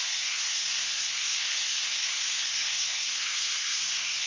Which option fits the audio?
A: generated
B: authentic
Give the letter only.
A